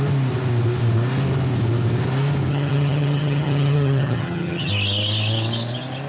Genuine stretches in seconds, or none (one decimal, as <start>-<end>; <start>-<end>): 0.0-2.5; 4.7-6.1